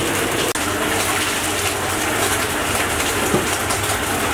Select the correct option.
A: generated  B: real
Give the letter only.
B